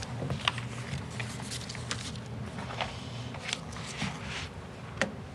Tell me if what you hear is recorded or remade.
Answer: recorded